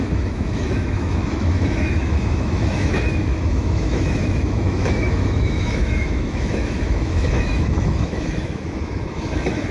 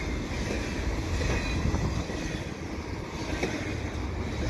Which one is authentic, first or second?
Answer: second